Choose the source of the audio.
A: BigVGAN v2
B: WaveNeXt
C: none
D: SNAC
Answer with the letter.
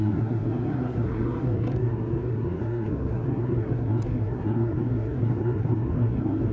D